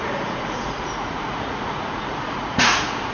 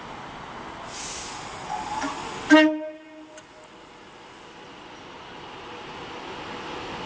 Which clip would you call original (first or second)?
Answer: second